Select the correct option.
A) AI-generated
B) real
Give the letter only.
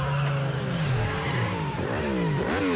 B